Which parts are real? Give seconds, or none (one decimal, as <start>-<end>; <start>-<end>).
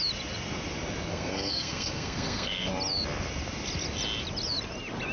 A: 0.0-1.1; 2.7-5.1